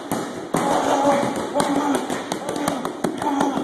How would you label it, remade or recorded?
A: recorded